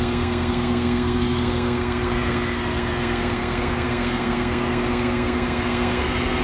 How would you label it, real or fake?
fake